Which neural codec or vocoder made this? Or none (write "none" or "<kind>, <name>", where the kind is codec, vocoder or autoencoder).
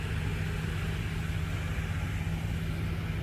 none